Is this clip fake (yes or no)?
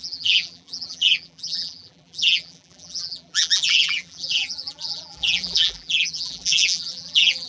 yes